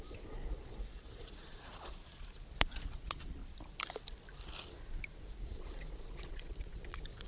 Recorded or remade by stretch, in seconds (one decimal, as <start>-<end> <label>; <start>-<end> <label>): 0.0-3.4 remade; 3.4-5.3 recorded; 5.3-7.3 remade

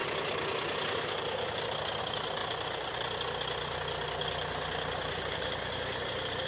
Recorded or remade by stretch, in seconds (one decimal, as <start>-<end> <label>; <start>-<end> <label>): 0.0-6.5 recorded

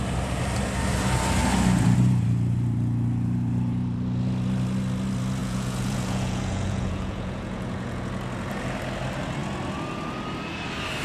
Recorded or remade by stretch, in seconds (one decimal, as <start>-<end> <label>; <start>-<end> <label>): 0.0-5.4 recorded; 5.4-8.0 remade; 8.0-11.0 recorded

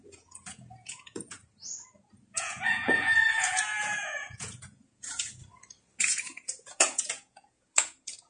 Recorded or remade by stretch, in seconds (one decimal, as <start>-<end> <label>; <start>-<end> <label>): 0.0-1.4 remade; 1.4-2.3 recorded; 2.3-5.4 remade; 5.4-6.0 recorded; 6.0-8.3 remade

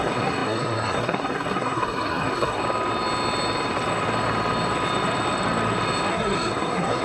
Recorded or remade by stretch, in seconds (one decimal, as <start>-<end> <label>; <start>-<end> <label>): 0.0-2.6 remade; 2.6-6.1 recorded; 6.1-7.0 remade

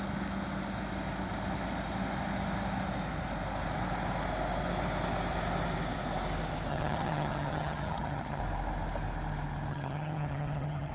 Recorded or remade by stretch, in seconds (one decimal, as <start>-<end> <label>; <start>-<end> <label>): 0.0-6.7 recorded; 6.7-8.4 remade; 8.4-9.7 recorded; 9.7-10.9 remade